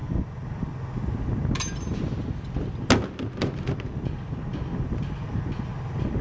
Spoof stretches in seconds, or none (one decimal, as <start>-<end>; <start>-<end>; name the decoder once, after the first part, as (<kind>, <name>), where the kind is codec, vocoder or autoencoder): none